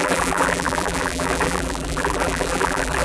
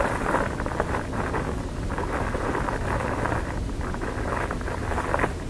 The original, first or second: second